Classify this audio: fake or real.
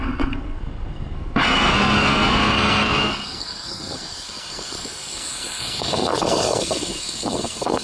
fake